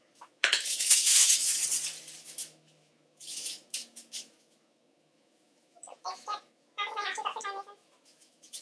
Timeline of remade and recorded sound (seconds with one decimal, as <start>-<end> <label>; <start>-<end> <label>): 0.0-1.6 remade; 1.6-2.2 recorded; 2.2-8.6 remade